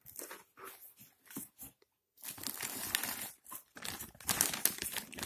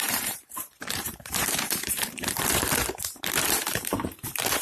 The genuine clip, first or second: first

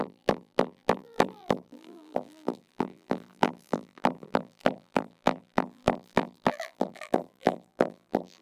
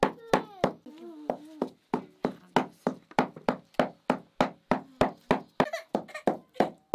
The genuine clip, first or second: second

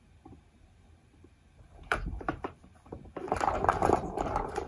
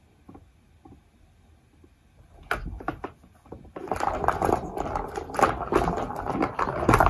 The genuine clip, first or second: second